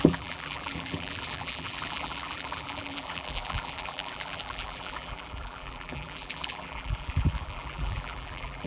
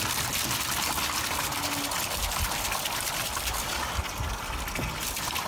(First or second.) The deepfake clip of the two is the first